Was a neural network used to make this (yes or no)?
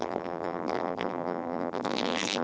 yes